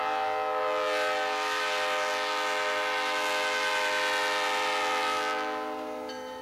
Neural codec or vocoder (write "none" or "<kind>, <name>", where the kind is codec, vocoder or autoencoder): none